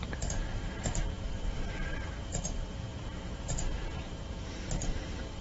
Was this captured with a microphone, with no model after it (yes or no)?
no